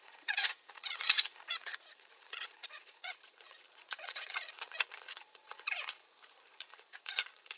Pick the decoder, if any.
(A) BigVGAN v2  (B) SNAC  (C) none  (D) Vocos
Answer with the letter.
D